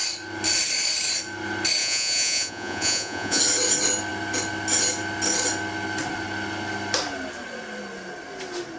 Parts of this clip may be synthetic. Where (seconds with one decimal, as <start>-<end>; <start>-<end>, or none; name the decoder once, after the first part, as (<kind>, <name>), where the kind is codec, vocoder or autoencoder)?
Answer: 1.8-3.4 (vocoder, Vocos)